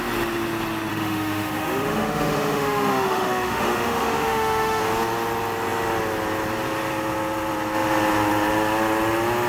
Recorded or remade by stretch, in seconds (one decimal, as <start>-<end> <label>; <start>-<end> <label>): 0.0-0.9 recorded; 0.9-4.8 remade; 4.8-9.5 recorded